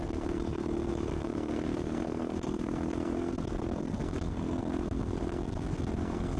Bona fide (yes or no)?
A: no